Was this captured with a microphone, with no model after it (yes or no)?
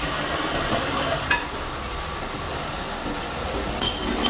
yes